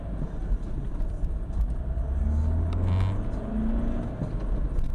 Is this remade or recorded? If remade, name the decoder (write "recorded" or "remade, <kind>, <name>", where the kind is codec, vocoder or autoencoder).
recorded